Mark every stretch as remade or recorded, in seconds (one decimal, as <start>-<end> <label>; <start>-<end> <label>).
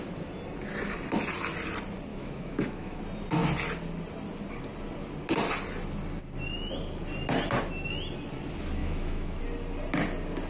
0.0-2.1 recorded; 2.1-3.0 remade; 3.0-8.8 recorded; 8.8-9.4 remade; 9.4-10.5 recorded